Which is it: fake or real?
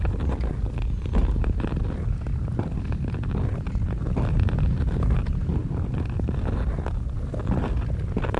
real